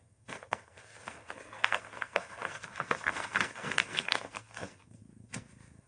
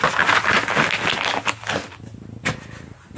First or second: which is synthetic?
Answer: first